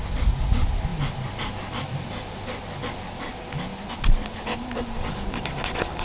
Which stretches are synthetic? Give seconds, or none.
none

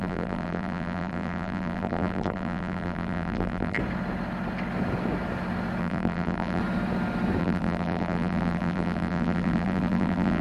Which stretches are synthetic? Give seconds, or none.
0.0-3.8 (vocoder, BigVGAN v2); 5.8-6.6; 7.4-10.4